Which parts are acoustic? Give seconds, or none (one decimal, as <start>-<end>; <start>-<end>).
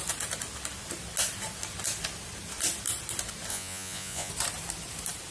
0.0-3.5; 4.3-5.3